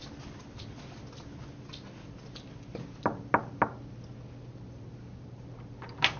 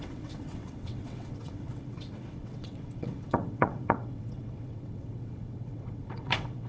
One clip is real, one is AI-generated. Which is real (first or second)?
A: first